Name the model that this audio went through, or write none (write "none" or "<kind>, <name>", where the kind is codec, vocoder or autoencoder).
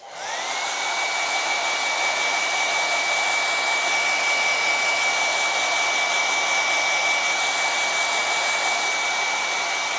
none